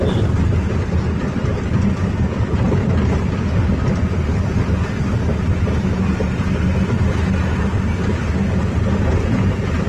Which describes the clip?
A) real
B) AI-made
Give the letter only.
A